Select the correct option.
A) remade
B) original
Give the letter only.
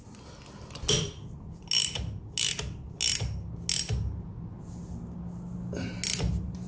B